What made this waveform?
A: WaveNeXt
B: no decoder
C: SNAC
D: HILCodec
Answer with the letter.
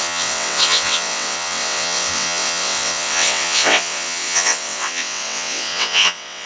A